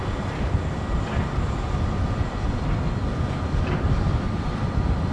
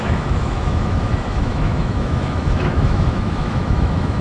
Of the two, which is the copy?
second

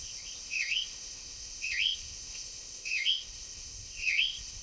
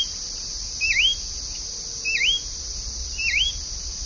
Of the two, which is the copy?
first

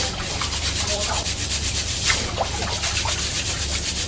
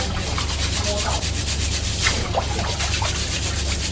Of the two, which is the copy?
first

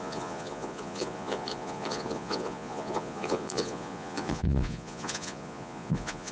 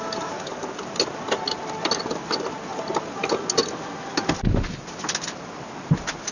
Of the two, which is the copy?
first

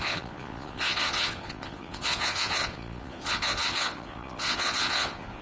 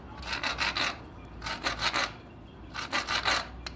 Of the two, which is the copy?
first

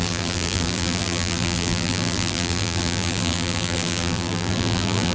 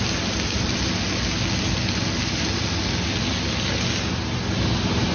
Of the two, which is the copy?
first